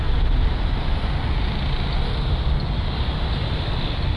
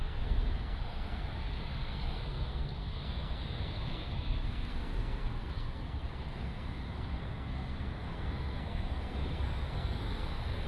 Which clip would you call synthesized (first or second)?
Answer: second